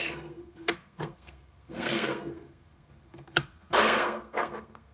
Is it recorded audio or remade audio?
remade